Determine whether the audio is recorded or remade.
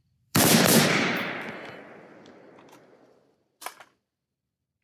remade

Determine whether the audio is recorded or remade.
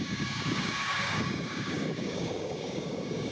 remade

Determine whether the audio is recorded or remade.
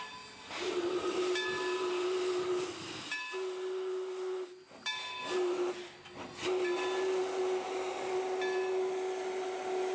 recorded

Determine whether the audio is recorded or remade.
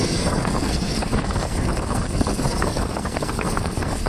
remade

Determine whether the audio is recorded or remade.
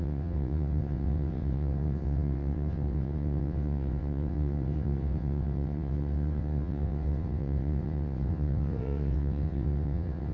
remade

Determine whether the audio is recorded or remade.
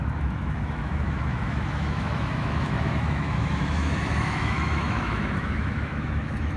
remade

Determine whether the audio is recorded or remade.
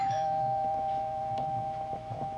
remade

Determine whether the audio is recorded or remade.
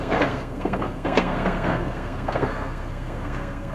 remade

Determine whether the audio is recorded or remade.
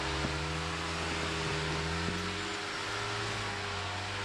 recorded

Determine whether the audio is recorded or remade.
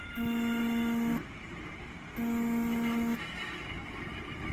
recorded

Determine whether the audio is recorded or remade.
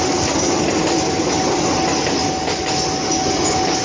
recorded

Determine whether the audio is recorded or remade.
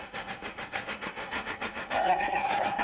remade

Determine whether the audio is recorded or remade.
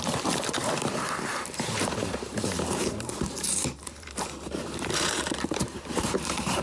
remade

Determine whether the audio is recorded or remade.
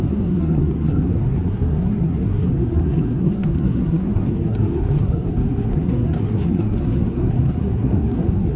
remade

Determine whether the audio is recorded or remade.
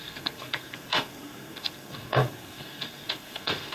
remade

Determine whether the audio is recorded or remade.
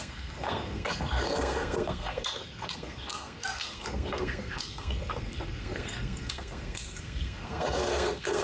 remade